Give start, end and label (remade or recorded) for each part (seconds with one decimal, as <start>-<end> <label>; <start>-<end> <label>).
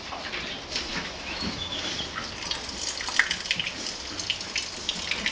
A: 0.0-0.9 recorded; 0.9-1.9 remade; 1.9-5.3 recorded